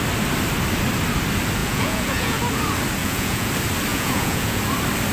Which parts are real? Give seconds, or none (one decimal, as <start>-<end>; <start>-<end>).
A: 0.0-1.6; 2.4-3.0; 3.5-3.9; 4.6-5.1